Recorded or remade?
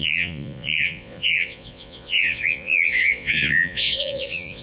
remade